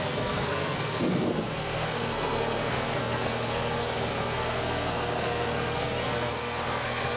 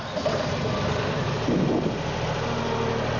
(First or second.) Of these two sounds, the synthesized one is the first